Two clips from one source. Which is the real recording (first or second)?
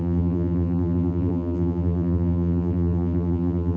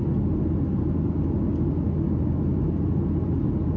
second